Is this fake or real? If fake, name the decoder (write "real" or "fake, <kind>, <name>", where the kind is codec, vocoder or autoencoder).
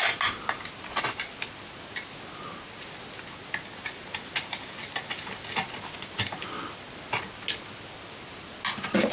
real